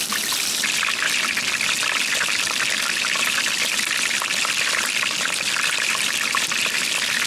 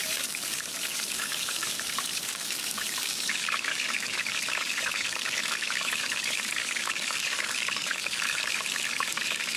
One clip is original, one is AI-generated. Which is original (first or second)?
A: first